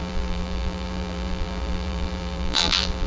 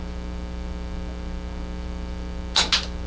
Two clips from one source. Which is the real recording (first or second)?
second